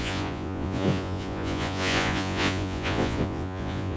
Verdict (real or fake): fake